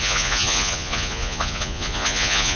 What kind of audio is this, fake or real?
fake